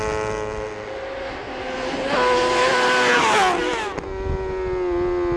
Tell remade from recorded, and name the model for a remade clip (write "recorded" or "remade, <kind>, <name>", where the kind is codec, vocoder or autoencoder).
recorded